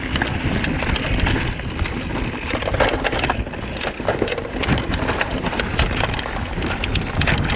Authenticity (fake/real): real